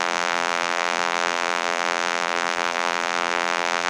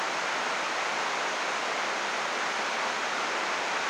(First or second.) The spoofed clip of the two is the first